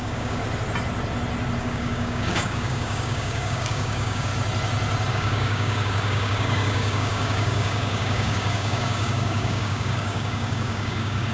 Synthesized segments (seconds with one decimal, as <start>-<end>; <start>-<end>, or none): 0.0-0.4; 1.6-4.3; 5.1-11.3